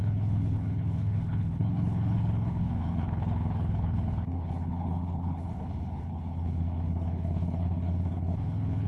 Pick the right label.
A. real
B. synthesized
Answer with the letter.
B